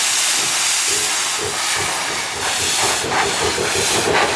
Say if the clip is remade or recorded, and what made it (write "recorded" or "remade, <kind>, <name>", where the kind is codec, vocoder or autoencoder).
recorded